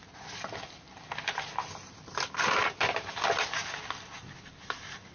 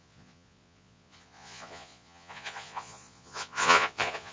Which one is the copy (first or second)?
second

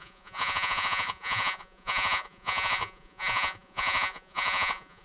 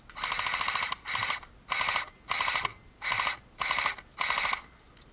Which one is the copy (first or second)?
first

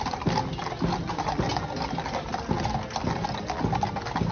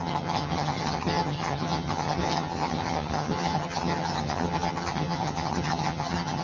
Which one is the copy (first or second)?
second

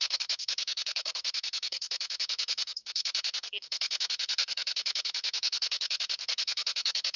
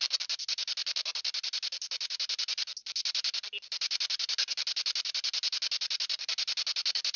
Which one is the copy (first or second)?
first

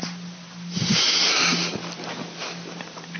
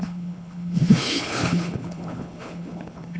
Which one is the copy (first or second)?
second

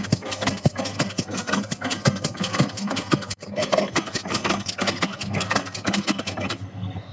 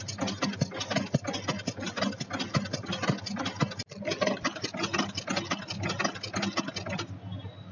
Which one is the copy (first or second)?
first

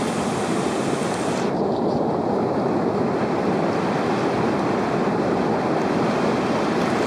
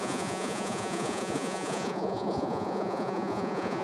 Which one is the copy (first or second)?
second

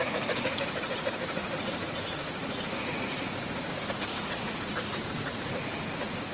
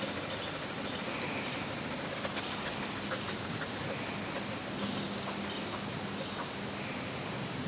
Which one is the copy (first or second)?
first